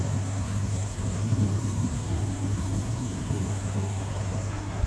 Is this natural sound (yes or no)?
no